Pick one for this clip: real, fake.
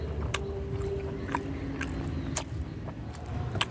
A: real